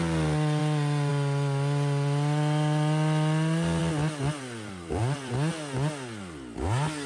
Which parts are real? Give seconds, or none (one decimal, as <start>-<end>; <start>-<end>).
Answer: 0.0-3.8; 5.3-7.1